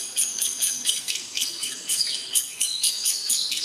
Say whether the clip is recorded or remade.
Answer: remade